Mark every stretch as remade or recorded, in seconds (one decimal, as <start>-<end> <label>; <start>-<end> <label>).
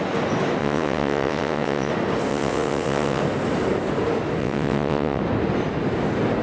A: 0.0-0.6 recorded; 0.6-1.9 remade; 1.9-2.3 recorded; 2.3-3.2 remade; 3.2-4.4 recorded; 4.4-5.2 remade; 5.2-6.4 recorded